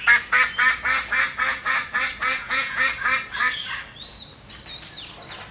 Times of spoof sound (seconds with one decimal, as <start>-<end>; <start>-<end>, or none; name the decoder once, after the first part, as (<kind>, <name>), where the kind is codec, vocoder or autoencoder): 2.2-2.8 (vocoder, Vocos)